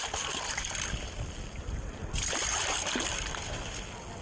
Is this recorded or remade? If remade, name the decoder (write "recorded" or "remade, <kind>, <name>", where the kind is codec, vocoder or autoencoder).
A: recorded